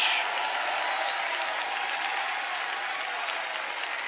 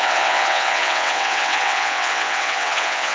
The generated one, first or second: second